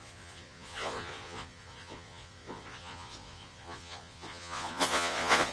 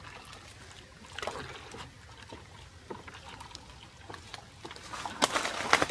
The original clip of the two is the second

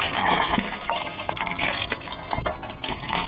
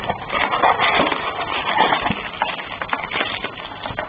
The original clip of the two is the second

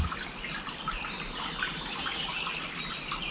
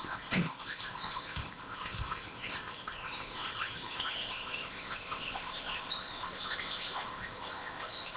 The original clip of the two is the first